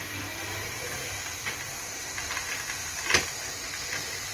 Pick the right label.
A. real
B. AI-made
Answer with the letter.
A